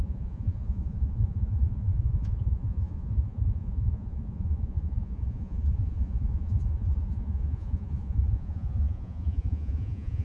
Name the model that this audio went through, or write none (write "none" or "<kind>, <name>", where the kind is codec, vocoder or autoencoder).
vocoder, Vocos